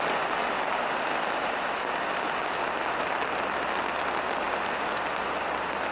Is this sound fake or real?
real